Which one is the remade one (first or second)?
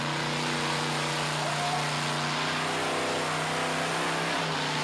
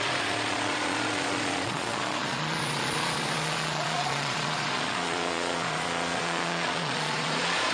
second